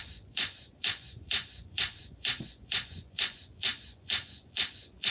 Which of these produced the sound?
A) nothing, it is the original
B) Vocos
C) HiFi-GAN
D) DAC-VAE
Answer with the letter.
B